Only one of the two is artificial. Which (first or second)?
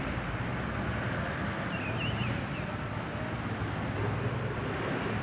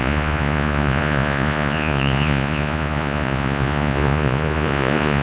second